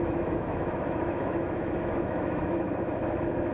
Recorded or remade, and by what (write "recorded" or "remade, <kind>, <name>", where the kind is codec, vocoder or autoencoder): remade, autoencoder, DAC-VAE